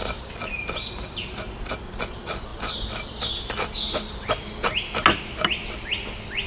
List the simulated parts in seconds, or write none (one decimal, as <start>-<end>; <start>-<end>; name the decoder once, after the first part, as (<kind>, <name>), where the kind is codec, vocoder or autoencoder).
0.0-0.9 (vocoder, BigVGAN v2)